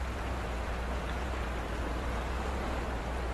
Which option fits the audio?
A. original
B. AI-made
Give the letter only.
B